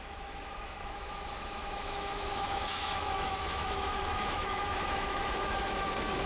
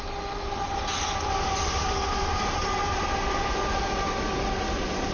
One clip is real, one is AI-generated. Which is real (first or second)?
second